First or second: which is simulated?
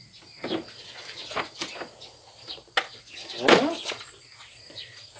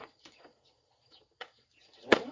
second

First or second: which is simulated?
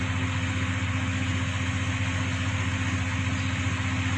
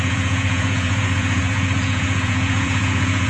second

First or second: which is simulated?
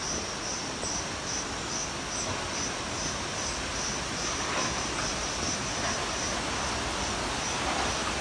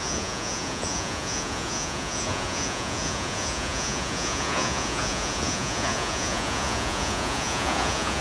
second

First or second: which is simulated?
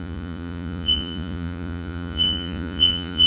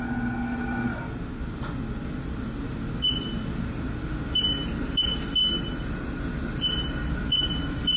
first